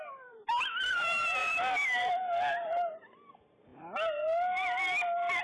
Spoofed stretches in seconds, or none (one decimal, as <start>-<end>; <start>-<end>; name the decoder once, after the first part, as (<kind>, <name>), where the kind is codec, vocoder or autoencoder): 0.0-3.7 (vocoder, BigVGAN v2)